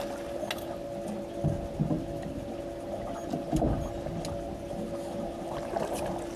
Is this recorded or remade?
recorded